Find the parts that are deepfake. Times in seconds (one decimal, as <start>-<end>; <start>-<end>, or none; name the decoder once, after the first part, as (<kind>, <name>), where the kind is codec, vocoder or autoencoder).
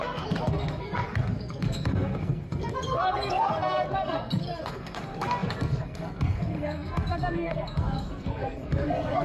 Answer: 0.0-9.2 (codec, SNAC)